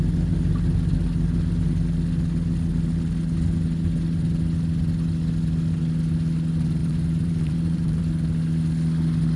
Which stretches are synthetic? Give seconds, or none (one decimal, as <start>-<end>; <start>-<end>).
6.8-8.0